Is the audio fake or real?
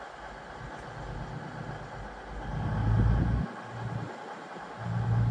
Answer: real